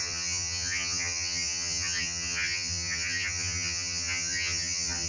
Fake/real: fake